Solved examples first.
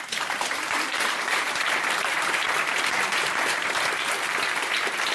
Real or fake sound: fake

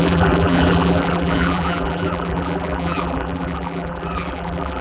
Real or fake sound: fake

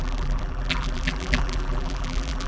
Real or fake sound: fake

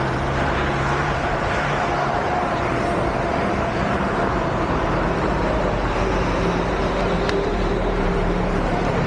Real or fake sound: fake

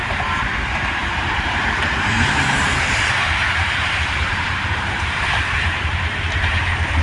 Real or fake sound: fake